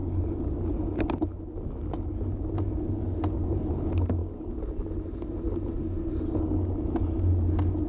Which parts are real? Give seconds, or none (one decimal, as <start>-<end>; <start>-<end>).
0.0-7.9